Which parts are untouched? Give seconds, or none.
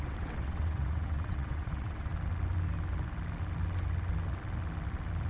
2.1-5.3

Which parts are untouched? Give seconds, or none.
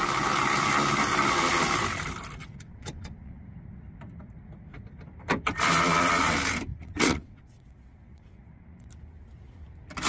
0.0-2.4; 3.4-6.7; 8.9-10.1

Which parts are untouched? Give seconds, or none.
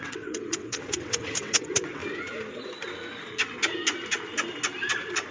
2.0-5.3